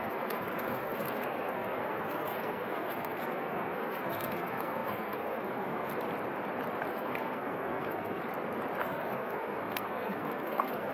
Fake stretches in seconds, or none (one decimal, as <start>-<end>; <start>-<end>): 0.0-5.9; 6.9-8.2; 8.8-10.9